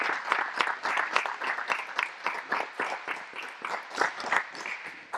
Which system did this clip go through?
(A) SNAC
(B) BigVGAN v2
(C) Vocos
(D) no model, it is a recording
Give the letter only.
D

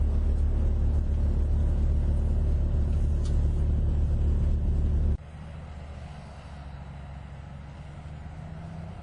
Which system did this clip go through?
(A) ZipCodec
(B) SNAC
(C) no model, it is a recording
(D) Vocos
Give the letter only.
C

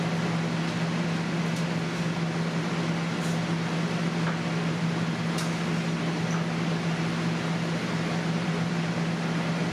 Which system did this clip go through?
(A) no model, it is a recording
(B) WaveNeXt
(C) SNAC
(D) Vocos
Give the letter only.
A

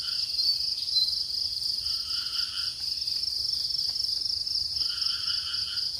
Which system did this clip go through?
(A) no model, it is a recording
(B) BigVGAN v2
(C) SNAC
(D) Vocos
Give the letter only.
A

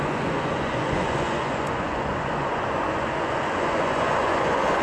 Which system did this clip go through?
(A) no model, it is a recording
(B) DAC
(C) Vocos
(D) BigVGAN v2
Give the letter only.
C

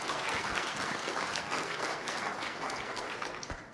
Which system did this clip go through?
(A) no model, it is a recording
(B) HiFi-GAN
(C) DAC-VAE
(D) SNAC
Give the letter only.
D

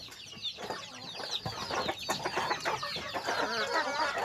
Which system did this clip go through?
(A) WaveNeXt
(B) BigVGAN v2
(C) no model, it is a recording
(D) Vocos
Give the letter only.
C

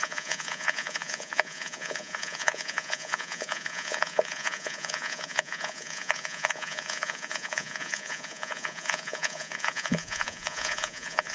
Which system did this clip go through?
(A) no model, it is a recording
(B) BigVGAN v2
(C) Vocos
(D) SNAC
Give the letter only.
C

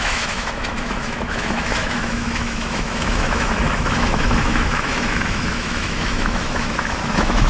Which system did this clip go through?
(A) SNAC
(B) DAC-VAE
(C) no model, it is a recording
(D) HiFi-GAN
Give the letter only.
B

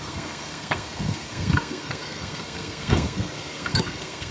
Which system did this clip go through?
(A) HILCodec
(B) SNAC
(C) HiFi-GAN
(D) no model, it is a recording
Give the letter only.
B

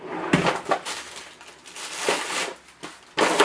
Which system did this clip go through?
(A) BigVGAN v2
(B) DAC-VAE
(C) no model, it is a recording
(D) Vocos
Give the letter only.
C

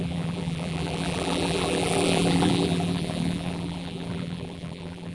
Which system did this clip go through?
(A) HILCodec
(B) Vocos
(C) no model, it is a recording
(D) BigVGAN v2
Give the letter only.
D